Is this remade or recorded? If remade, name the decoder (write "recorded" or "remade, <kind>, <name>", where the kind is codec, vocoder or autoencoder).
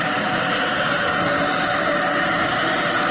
recorded